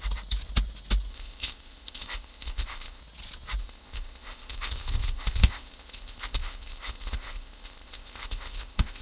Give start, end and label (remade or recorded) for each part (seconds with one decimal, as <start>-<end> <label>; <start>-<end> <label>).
0.0-1.1 recorded; 1.1-3.0 remade; 3.0-3.6 recorded; 3.6-9.0 remade